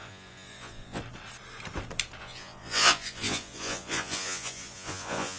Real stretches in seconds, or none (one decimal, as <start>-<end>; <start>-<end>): 1.0-2.2